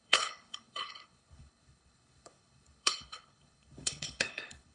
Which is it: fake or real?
fake